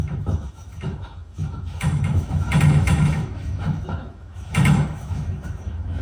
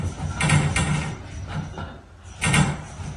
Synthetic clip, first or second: first